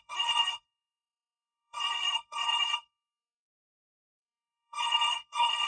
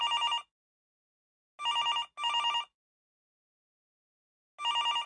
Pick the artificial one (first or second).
first